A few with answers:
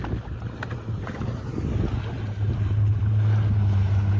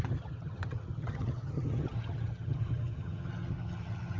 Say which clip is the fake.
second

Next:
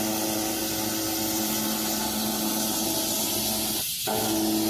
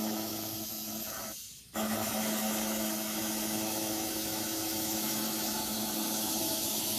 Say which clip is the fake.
second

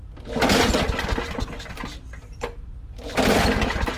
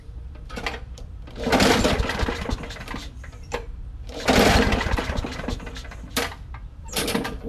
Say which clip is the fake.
second